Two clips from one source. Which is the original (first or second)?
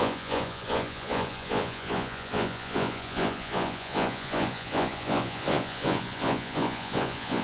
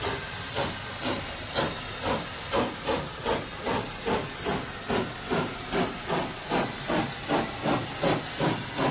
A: second